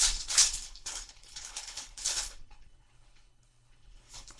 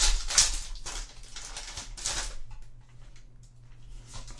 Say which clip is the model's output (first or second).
first